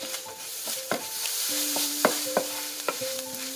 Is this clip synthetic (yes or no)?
yes